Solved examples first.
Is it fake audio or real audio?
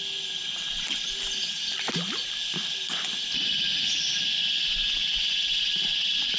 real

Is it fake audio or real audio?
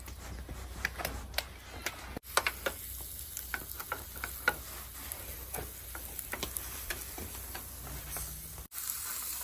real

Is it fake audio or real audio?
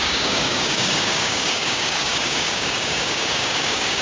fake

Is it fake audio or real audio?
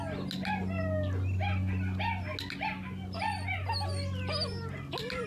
real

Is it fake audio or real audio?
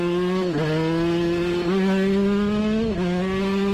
real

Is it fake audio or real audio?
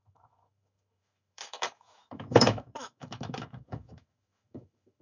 fake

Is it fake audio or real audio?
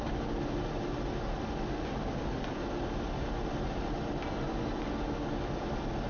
real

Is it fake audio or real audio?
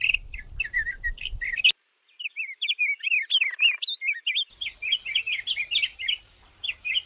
real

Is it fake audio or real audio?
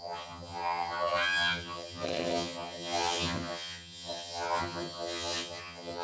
fake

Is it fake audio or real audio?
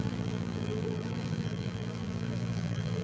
fake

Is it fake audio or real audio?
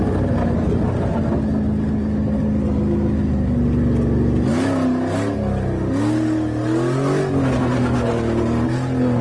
real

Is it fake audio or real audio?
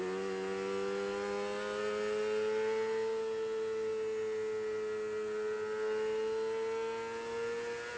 real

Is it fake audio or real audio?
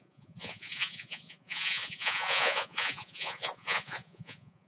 fake